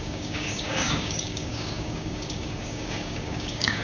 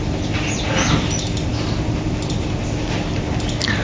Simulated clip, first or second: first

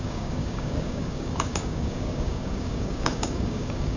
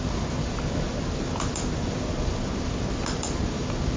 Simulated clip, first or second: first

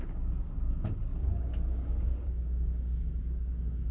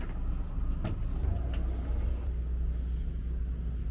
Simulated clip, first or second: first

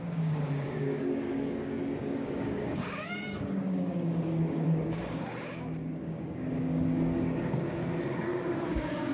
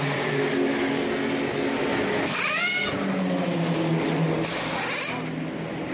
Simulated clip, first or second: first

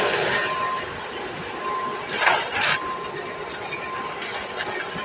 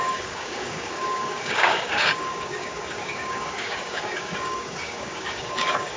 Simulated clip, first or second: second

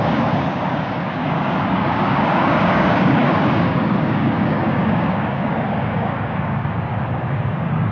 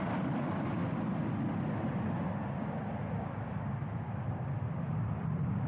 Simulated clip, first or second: first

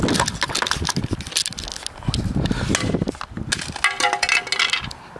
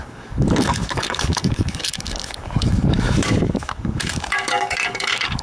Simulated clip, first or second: second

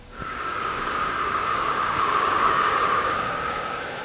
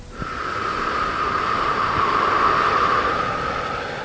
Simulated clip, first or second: first